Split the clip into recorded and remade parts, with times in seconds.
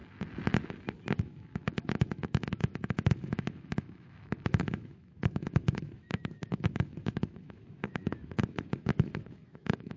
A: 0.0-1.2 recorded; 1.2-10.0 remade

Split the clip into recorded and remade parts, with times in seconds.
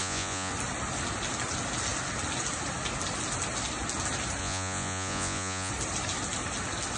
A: 0.0-0.5 remade; 0.5-4.4 recorded; 4.4-5.7 remade; 5.7-7.0 recorded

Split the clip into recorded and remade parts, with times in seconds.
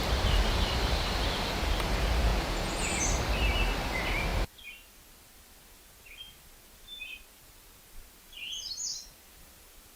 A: 0.0-2.3 recorded; 2.3-2.9 remade; 2.9-10.0 recorded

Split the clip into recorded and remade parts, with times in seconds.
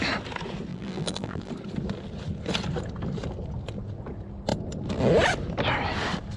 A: 0.0-0.7 recorded; 0.7-1.5 remade; 1.5-6.4 recorded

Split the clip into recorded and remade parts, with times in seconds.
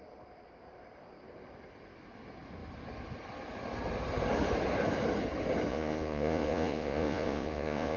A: 0.0-5.7 recorded; 5.7-8.0 remade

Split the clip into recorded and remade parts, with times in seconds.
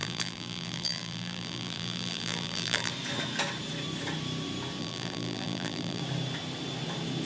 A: 0.0-2.9 remade; 2.9-4.8 recorded; 4.8-6.0 remade; 6.0-7.3 recorded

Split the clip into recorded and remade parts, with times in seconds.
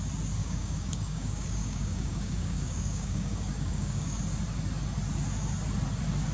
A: 0.0-0.4 recorded; 0.4-4.2 remade; 4.2-6.3 recorded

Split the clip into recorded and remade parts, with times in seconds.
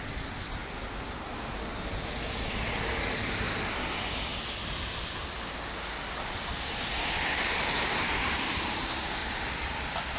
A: 0.0-0.6 recorded; 0.6-1.7 remade; 1.7-9.2 recorded; 9.2-10.2 remade